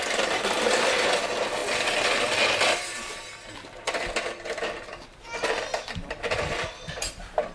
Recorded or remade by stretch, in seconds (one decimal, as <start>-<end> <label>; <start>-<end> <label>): 0.0-1.6 remade; 1.6-5.2 recorded; 5.2-7.5 remade